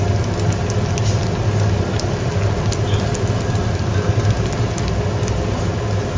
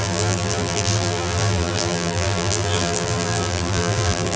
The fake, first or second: second